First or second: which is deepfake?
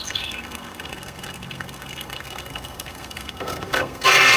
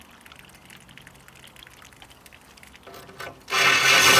first